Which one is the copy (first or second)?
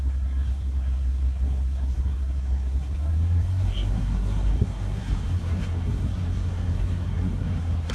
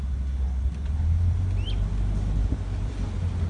first